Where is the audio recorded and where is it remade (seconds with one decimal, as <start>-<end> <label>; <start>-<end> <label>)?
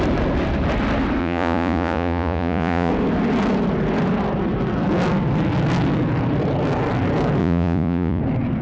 0.0-1.2 recorded; 1.2-2.9 remade; 2.9-7.4 recorded; 7.4-8.2 remade; 8.2-8.6 recorded